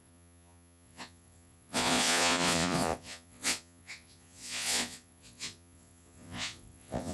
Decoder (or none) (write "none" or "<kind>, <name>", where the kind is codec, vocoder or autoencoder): vocoder, Vocos